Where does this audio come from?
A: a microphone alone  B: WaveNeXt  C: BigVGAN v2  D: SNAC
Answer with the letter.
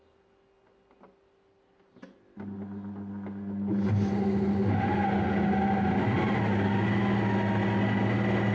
A